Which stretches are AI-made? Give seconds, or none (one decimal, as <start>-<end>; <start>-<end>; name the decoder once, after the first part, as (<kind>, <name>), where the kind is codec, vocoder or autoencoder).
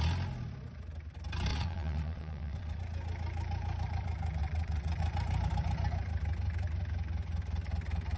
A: 1.5-2.8 (vocoder, WaveNeXt); 4.4-5.0